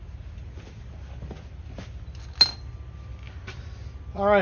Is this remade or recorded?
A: recorded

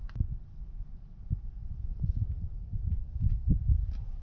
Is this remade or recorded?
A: recorded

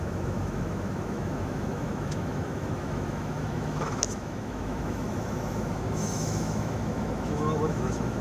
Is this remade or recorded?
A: remade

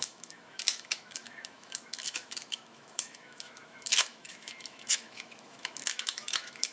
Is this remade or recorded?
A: remade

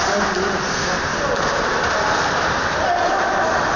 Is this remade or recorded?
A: recorded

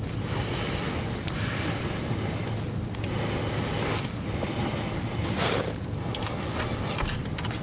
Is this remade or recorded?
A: recorded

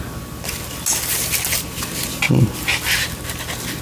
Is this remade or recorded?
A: recorded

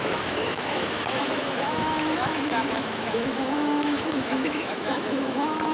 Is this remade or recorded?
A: remade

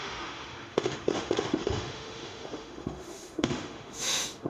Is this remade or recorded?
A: remade